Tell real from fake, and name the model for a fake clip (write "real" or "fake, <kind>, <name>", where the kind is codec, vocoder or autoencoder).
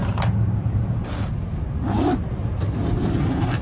fake, vocoder, BigVGAN v2